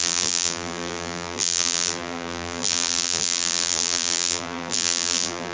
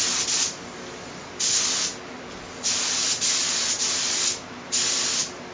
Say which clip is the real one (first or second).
second